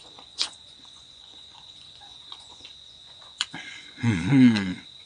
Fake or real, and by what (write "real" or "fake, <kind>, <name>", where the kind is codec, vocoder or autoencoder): fake, vocoder, Vocos